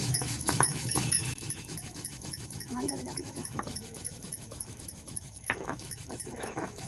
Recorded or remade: remade